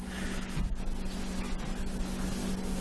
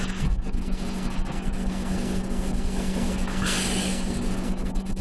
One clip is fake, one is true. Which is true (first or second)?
first